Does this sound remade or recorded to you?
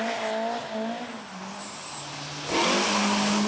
recorded